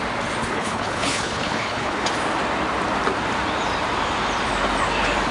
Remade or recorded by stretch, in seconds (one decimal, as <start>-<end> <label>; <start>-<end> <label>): 0.0-0.4 recorded; 0.4-2.1 remade; 2.1-5.3 recorded